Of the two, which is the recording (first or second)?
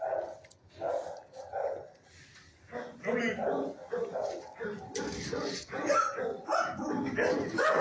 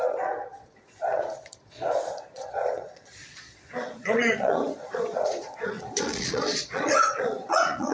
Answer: first